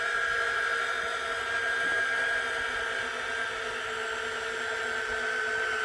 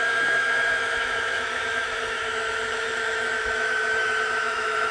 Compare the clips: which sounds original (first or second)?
first